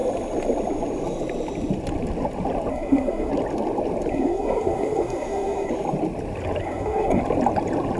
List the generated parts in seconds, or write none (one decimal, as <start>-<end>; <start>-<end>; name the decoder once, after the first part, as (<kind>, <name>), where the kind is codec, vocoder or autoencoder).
2.7-3.3 (codec, SNAC); 4.1-5.7; 6.6-7.2